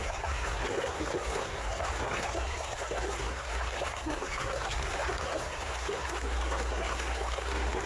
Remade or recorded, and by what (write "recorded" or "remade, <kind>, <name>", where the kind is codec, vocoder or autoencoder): remade, codec, SNAC